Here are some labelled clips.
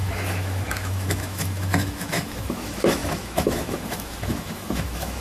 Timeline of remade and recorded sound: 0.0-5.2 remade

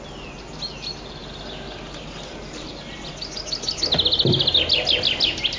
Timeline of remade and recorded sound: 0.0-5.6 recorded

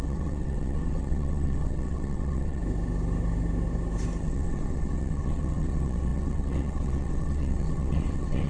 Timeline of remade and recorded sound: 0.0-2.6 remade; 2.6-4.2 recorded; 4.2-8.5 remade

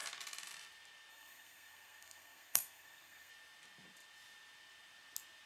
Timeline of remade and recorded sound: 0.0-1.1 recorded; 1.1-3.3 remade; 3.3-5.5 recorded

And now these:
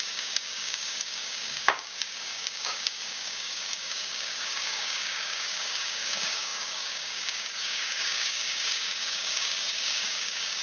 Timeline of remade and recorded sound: 0.0-10.6 remade

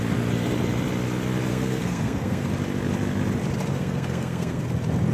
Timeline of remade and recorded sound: 0.0-1.5 recorded; 1.5-2.5 remade; 2.5-3.7 recorded; 3.7-4.6 remade; 4.6-5.1 recorded